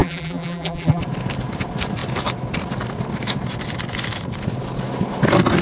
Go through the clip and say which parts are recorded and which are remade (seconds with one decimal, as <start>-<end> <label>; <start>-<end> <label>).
0.0-1.0 remade; 1.0-5.6 recorded